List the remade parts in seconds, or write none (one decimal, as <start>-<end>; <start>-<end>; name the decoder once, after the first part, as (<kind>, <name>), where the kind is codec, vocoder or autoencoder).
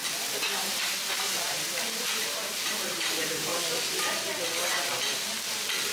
1.4-3.5 (vocoder, BigVGAN v2); 5.5-5.9